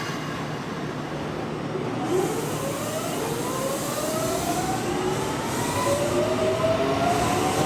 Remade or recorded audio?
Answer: recorded